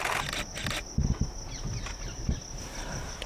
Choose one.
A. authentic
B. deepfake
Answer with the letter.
A